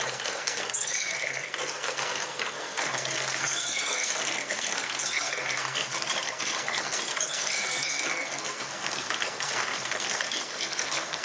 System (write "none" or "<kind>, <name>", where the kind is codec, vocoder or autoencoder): codec, SNAC